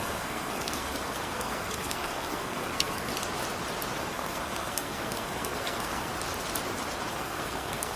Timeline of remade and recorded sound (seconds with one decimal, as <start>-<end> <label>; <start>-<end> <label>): 0.0-3.1 remade; 3.1-4.0 recorded; 4.0-6.1 remade; 6.1-7.1 recorded; 7.1-8.0 remade